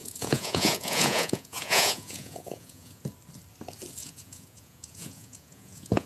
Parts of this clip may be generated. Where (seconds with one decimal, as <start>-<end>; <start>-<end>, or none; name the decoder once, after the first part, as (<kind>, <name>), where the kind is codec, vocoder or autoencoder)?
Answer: 0.0-3.0 (vocoder, Vocos); 4.0-6.1